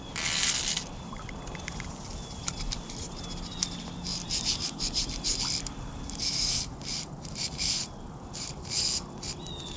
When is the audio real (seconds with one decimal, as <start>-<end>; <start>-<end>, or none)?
0.0-4.1; 5.4-6.0; 8.6-9.8